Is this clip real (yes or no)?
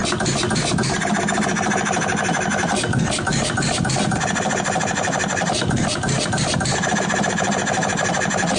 yes